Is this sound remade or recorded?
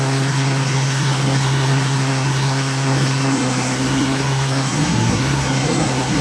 remade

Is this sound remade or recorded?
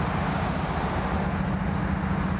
recorded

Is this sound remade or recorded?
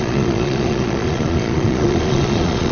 remade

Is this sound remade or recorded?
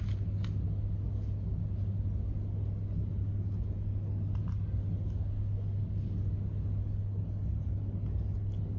recorded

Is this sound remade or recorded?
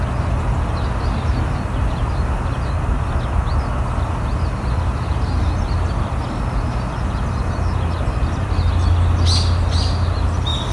recorded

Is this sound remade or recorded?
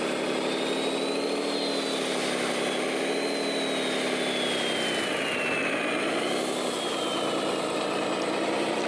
recorded